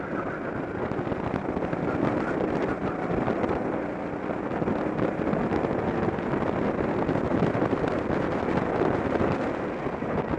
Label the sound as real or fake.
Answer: real